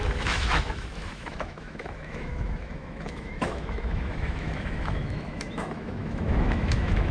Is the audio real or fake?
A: fake